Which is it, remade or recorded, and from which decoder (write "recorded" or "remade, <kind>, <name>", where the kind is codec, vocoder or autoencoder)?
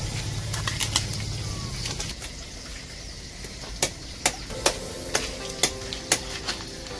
recorded